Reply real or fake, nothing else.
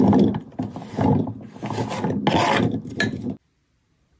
real